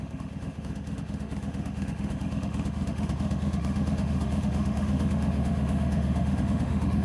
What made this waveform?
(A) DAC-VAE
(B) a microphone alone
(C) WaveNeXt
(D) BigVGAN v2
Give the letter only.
A